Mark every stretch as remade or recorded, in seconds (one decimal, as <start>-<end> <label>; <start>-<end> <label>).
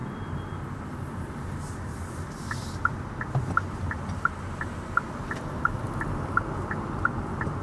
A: 0.0-1.7 recorded; 1.7-7.6 remade